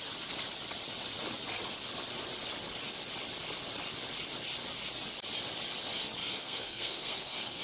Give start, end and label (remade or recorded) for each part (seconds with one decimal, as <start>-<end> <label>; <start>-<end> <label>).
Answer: 0.0-6.2 recorded; 6.2-7.6 remade